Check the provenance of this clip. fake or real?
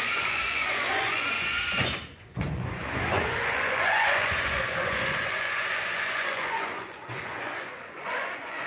fake